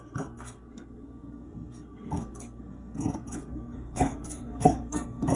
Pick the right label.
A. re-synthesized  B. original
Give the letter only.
A